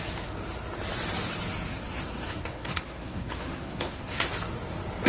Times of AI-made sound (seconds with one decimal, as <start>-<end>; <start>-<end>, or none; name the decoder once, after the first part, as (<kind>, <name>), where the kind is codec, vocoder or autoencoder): 1.7-4.3 (codec, SNAC)